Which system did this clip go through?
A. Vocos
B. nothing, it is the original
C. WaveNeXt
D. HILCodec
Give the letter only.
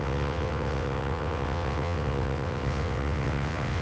C